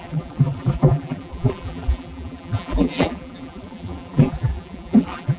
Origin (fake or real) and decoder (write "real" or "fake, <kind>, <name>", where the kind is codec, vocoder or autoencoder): fake, vocoder, BigVGAN v2